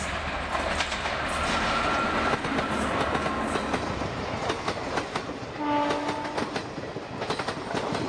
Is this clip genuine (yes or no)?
yes